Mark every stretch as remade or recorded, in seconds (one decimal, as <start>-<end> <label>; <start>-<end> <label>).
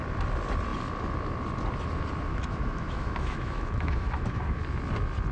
0.0-2.3 recorded; 2.3-4.6 remade; 4.6-5.3 recorded